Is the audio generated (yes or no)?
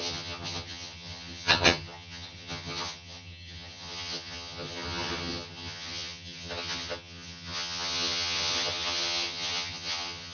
yes